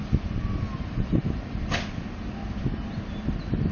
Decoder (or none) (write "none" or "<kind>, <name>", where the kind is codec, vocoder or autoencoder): none